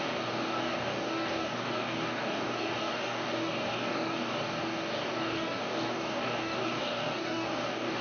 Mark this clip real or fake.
fake